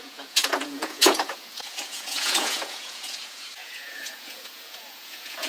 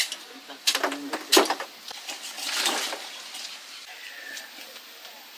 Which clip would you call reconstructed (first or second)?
first